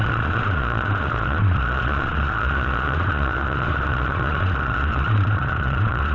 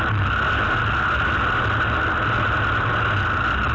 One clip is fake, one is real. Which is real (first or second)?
second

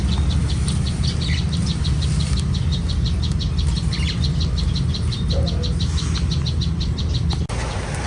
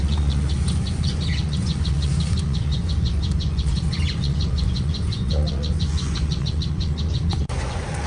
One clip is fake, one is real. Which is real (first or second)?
first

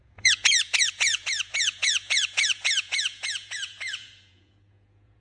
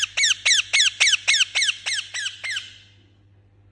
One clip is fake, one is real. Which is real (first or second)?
second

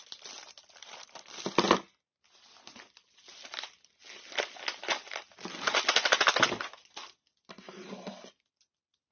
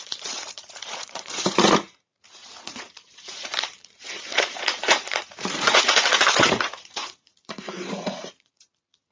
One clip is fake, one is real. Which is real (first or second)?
first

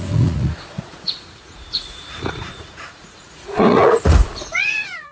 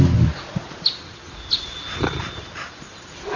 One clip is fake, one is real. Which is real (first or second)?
second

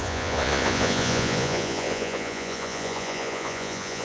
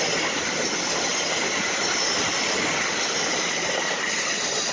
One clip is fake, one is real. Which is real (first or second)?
second